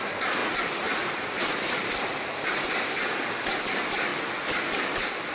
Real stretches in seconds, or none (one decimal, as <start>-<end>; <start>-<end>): none